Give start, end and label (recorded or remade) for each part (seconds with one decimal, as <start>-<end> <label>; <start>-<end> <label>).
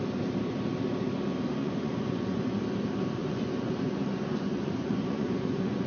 0.0-1.6 recorded; 1.6-2.6 remade; 2.6-3.2 recorded; 3.2-5.9 remade